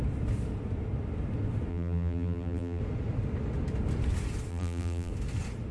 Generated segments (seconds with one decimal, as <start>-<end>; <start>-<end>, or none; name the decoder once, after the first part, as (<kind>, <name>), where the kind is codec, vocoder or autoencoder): 1.7-2.8 (vocoder, BigVGAN v2); 4.5-5.1